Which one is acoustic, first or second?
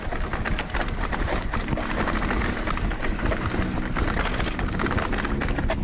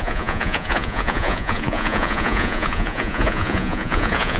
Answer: first